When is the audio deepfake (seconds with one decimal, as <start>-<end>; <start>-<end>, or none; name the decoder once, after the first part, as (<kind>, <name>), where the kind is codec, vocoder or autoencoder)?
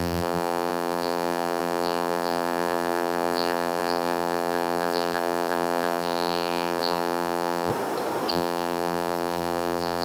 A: 0.0-7.7 (vocoder, BigVGAN v2); 8.3-10.0